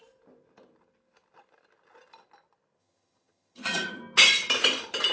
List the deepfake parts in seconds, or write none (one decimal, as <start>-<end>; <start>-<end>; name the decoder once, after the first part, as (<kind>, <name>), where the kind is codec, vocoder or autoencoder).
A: 2.8-4.0 (vocoder, HiFi-GAN)